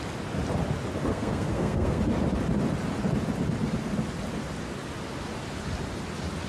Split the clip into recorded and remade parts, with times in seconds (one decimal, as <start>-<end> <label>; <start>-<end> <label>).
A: 0.0-1.1 recorded; 1.1-2.0 remade; 2.0-6.5 recorded